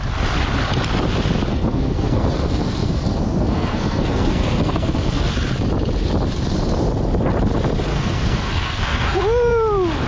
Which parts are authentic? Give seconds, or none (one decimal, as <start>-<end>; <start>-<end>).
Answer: 0.0-1.5; 5.3-7.9; 9.2-10.1